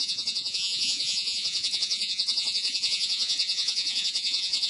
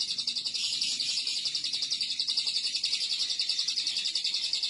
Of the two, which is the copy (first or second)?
first